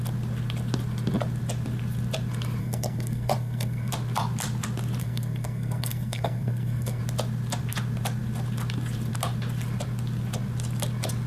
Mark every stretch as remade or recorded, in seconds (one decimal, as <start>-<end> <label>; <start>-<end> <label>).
0.0-2.6 recorded; 2.6-3.9 remade; 3.9-5.0 recorded; 5.0-7.0 remade; 7.0-11.3 recorded

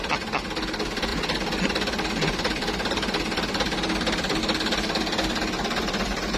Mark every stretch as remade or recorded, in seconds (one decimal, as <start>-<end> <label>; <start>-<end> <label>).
0.0-1.1 recorded; 1.1-4.4 remade; 4.4-6.4 recorded

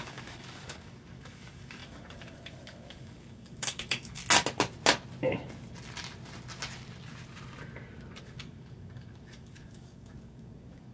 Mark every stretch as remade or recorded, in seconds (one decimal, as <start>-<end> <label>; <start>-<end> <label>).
0.0-4.2 remade; 4.2-8.2 recorded; 8.2-10.9 remade